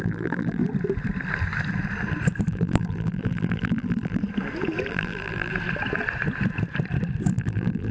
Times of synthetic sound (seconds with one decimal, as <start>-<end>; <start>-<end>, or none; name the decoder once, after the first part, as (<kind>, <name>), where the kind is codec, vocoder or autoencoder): 0.0-0.6 (vocoder, BigVGAN v2); 2.5-4.2; 4.9-5.5; 7.3-7.9